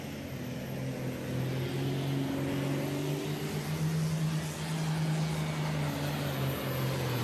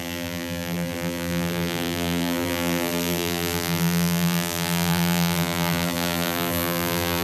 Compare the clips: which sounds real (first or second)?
first